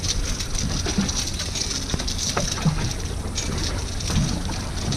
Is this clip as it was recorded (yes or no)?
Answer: yes